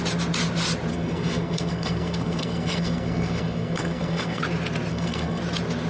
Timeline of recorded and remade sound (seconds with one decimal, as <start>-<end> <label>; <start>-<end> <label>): 0.0-0.9 recorded; 0.9-4.4 remade; 4.4-4.9 recorded; 4.9-5.4 remade; 5.4-5.9 recorded